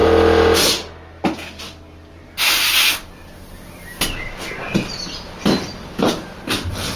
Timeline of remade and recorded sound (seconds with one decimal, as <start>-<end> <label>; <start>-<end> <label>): 0.0-7.0 recorded